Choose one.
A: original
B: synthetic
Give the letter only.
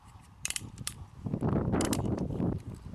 B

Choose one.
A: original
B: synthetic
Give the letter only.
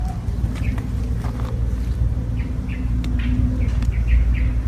A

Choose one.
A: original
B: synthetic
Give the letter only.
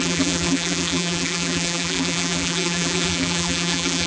B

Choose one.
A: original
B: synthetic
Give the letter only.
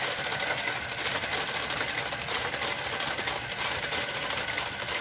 A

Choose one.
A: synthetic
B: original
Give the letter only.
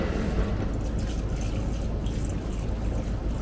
B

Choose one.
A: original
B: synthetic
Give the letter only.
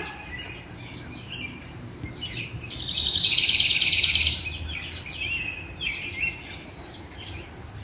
B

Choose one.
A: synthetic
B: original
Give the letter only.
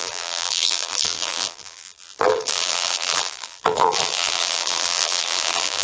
A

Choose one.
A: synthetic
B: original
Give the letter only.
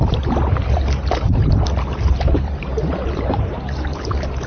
A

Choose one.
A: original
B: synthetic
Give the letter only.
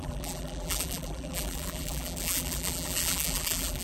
B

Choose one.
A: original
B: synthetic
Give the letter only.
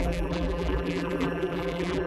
B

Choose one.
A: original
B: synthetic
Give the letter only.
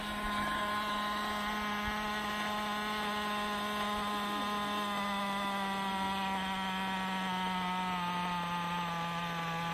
A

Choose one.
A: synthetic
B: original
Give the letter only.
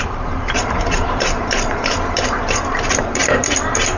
A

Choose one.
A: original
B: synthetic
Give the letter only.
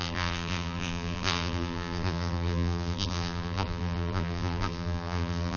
B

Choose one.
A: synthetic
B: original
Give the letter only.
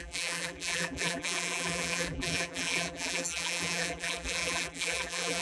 A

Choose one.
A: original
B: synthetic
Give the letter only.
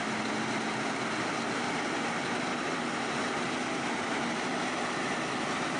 A